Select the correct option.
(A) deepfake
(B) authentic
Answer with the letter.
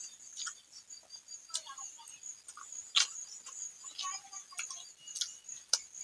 B